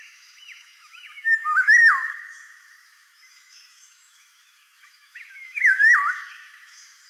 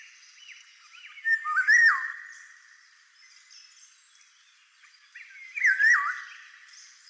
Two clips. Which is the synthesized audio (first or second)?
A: first